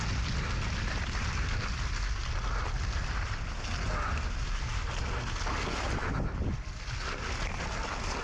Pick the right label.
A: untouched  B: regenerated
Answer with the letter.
A